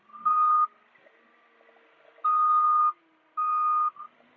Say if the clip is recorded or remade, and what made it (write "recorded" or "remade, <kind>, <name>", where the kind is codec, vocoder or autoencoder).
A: recorded